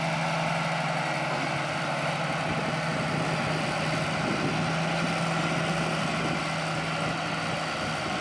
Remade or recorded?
recorded